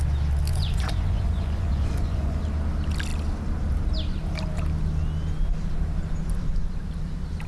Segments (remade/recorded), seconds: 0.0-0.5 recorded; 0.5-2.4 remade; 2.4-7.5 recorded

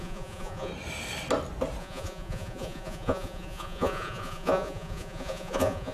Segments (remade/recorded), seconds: 0.0-0.7 remade; 0.7-1.8 recorded; 1.8-5.9 remade